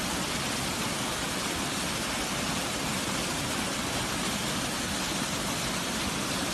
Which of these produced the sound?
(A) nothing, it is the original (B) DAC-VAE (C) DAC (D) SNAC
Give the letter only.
A